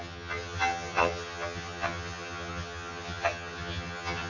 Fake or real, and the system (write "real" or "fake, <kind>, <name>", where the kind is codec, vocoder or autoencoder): fake, vocoder, HiFi-GAN